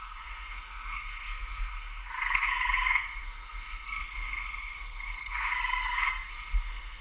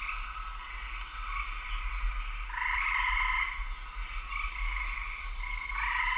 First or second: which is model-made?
first